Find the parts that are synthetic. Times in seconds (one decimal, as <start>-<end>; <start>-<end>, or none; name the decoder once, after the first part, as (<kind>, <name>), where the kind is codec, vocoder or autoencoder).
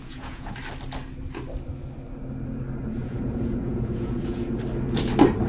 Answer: 0.0-0.5 (vocoder, Vocos); 3.0-4.6